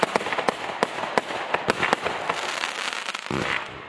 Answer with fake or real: real